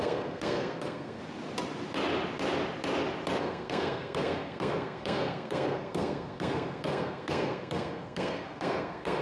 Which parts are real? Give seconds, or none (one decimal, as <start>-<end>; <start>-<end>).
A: 1.2-3.4